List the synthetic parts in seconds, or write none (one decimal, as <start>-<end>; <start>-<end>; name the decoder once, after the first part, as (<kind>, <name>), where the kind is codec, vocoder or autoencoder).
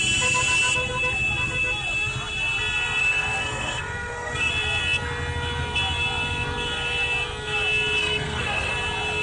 3.0-4.5 (codec, SNAC); 8.0-8.7